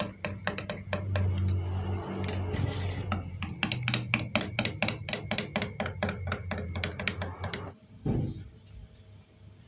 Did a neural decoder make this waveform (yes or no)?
no